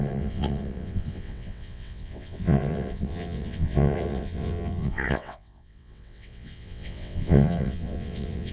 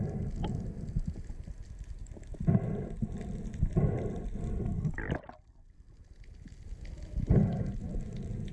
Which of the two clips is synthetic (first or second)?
first